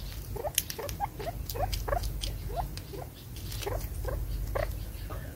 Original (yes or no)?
yes